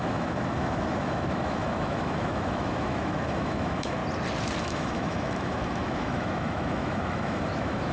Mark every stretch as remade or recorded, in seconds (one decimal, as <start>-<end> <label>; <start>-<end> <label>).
0.0-4.0 remade; 4.0-4.6 recorded; 4.6-7.9 remade